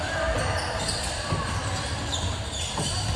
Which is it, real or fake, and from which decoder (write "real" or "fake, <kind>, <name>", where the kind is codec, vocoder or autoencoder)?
real